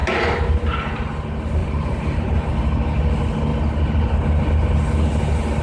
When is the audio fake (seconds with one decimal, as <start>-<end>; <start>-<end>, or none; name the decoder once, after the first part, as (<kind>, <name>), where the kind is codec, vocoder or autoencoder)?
1.6-2.5 (vocoder, BigVGAN v2)